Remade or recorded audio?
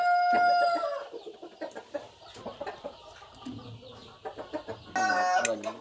recorded